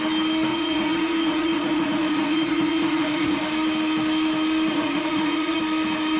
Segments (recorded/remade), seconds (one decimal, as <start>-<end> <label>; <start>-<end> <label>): 0.0-0.5 recorded; 0.5-3.4 remade; 3.4-4.7 recorded; 4.7-5.6 remade; 5.6-6.2 recorded